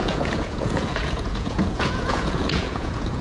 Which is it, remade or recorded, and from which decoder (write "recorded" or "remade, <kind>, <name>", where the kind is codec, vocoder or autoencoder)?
remade, vocoder, Vocos